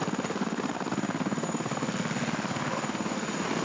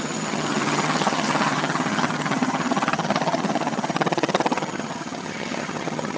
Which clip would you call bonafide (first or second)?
first